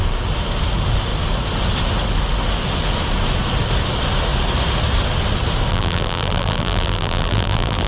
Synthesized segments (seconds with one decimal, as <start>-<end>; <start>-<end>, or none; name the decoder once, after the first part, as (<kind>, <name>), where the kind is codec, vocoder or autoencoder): 5.7-7.9 (vocoder, BigVGAN v2)